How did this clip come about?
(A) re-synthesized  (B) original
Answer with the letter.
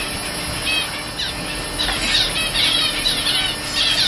B